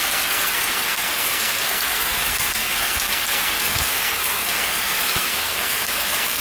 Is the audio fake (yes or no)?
yes